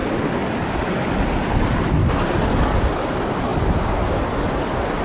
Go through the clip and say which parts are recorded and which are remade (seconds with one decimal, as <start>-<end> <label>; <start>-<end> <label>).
0.0-5.0 recorded